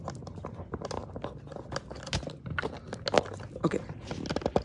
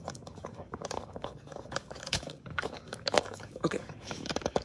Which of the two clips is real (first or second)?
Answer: first